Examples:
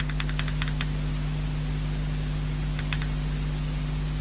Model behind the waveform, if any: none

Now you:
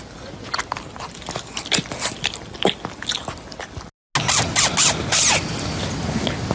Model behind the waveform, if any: none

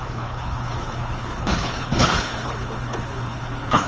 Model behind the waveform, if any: codec, HILCodec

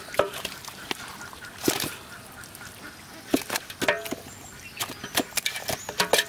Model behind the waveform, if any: none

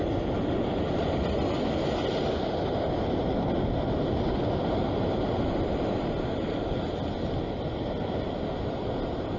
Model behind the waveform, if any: none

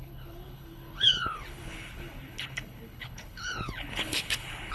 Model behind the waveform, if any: codec, HILCodec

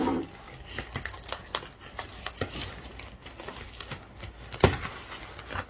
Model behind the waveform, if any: none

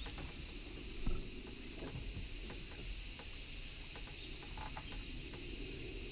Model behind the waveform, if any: none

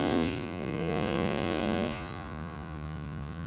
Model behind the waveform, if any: vocoder, Vocos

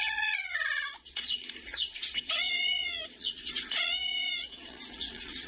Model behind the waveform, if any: vocoder, Vocos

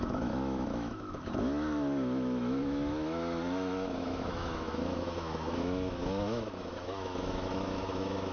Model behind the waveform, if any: autoencoder, DAC-VAE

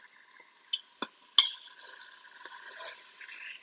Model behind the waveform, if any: none